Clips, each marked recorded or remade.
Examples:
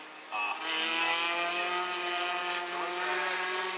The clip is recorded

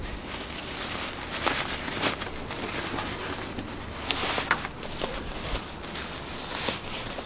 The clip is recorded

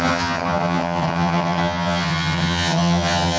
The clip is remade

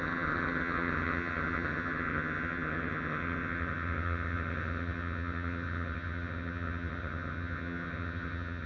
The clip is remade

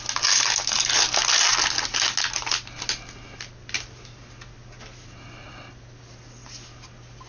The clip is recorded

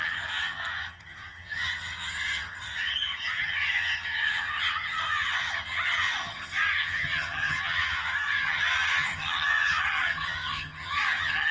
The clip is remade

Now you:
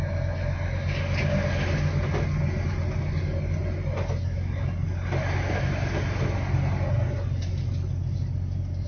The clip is recorded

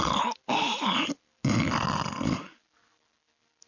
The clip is recorded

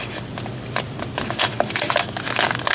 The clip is recorded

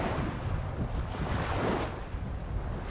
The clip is recorded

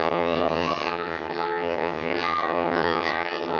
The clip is remade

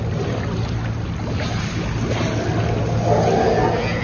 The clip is recorded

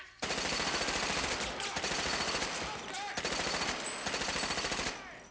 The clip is recorded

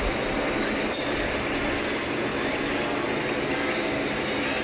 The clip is recorded